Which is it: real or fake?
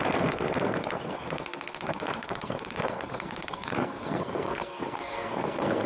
fake